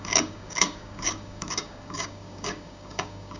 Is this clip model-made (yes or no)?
yes